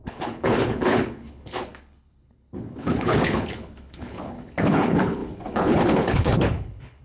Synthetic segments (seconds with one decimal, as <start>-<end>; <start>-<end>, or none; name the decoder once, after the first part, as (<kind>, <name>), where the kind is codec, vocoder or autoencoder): 0.0-7.0 (codec, HILCodec)